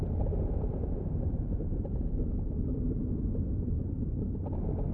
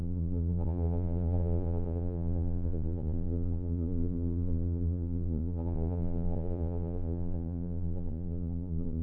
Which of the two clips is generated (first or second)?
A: second